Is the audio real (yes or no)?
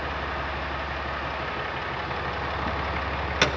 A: yes